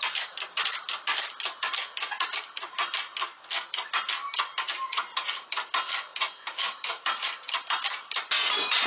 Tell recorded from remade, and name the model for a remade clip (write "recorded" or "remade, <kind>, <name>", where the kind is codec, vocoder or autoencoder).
recorded